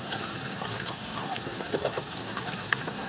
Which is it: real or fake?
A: fake